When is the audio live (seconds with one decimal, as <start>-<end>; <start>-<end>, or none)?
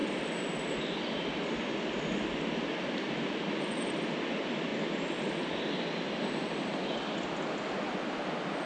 0.0-8.7